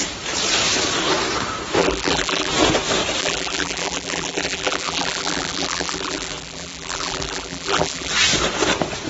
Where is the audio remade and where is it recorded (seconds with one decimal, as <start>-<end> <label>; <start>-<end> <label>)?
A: 0.0-1.8 recorded; 1.8-2.5 remade; 2.5-3.2 recorded; 3.2-8.1 remade; 8.1-9.1 recorded